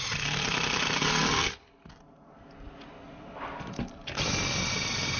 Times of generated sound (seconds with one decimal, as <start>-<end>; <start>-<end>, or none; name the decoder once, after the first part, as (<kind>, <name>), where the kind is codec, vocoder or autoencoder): none